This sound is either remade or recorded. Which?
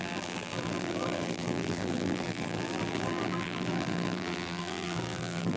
remade